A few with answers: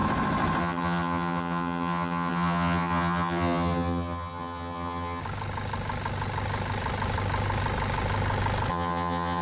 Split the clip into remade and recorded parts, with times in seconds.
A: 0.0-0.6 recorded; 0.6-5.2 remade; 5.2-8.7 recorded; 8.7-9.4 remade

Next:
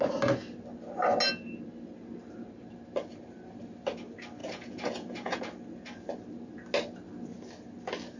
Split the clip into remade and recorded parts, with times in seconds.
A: 0.0-4.4 recorded; 4.4-5.4 remade; 5.4-8.2 recorded

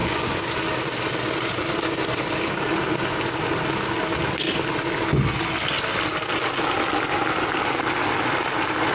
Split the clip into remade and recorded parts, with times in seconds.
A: 0.0-0.5 remade; 0.5-8.9 recorded

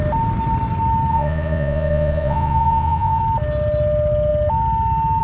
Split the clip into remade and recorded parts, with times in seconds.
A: 0.0-1.1 recorded; 1.1-3.2 remade; 3.2-5.2 recorded